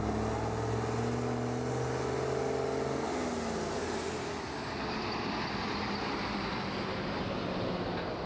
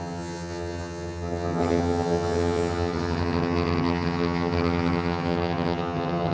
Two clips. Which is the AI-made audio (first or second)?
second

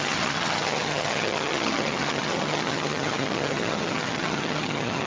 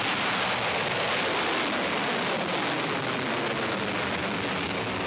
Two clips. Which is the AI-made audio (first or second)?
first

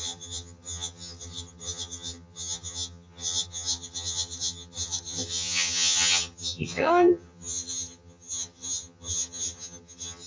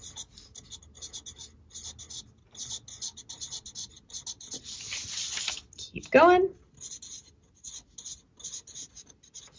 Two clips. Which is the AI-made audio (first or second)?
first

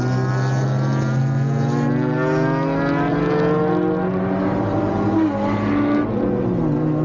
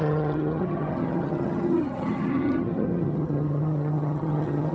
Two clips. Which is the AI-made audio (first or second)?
second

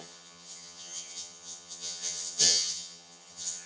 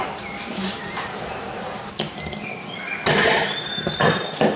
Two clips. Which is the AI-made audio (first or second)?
first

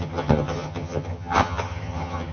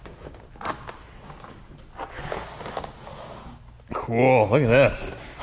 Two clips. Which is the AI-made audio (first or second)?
first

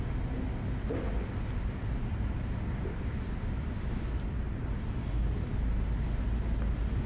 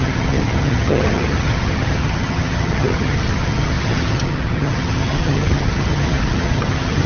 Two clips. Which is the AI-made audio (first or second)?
second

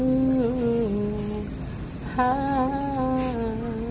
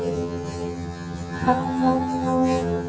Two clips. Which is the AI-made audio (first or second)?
second